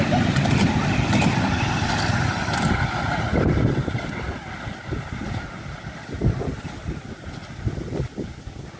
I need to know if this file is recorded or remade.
recorded